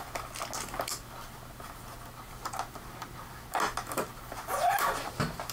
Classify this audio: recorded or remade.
recorded